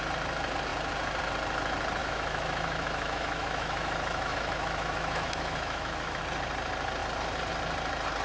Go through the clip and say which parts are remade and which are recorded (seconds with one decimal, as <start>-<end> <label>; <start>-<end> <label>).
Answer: 0.0-2.0 recorded; 2.0-6.2 remade; 6.2-8.2 recorded